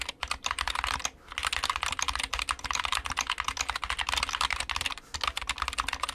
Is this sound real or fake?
real